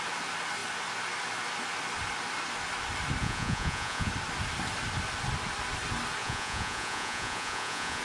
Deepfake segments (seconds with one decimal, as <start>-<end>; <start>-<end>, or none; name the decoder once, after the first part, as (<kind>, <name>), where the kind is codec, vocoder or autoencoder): 3.2-4.1 (vocoder, Vocos); 6.2-8.0